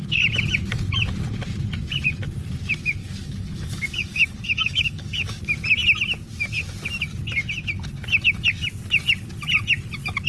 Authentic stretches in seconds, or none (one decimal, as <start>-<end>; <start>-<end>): 0.0-3.0; 5.4-10.3